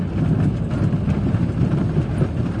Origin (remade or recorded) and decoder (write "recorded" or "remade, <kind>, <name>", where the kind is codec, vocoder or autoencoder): recorded